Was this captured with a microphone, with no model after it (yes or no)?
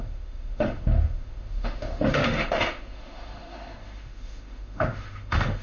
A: no